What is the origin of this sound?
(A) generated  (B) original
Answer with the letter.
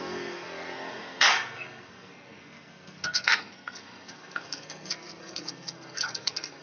A